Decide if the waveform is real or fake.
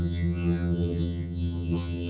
fake